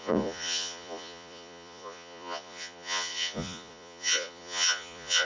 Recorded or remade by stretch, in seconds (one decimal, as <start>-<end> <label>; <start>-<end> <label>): 0.0-5.3 remade